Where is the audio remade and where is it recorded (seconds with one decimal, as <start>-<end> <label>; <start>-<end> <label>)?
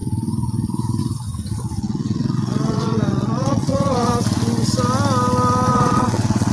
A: 0.0-1.8 recorded; 1.8-4.1 remade; 4.1-5.7 recorded; 5.7-6.5 remade